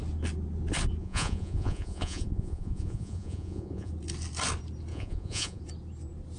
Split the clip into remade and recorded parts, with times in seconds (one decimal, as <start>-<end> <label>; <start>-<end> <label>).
0.0-1.0 recorded; 1.0-3.9 remade; 3.9-4.9 recorded; 4.9-5.6 remade; 5.6-6.4 recorded